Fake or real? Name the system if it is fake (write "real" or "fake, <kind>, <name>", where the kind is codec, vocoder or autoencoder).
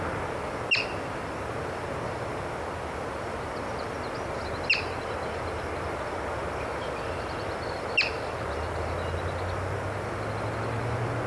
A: real